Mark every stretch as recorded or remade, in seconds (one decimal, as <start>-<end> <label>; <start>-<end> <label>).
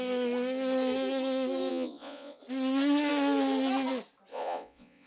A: 0.0-1.7 recorded; 1.7-2.4 remade; 2.4-4.3 recorded; 4.3-5.1 remade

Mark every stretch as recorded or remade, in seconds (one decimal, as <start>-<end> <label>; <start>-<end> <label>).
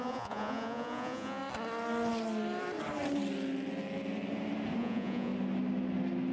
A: 0.0-1.4 remade; 1.4-4.8 recorded; 4.8-5.3 remade; 5.3-6.3 recorded